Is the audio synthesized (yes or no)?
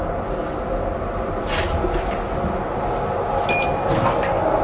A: no